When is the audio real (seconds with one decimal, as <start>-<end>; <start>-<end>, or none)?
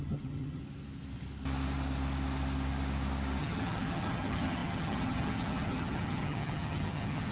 0.6-3.4